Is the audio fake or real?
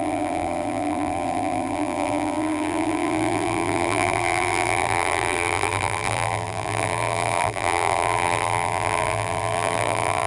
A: fake